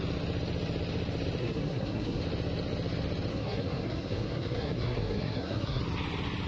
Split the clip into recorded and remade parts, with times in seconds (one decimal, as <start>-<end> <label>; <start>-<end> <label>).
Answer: 0.0-1.4 recorded; 1.4-2.2 remade; 2.2-3.3 recorded; 3.3-5.8 remade; 5.8-6.5 recorded